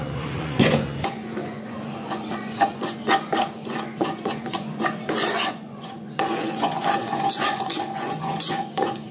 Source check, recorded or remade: remade